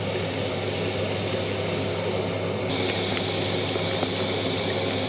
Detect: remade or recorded recorded